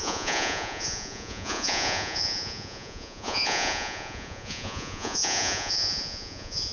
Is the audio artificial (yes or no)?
yes